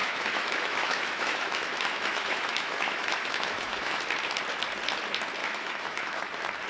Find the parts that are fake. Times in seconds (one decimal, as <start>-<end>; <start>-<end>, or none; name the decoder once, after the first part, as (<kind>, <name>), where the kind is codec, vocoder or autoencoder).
0.0-4.0 (autoencoder, DAC-VAE); 5.4-6.2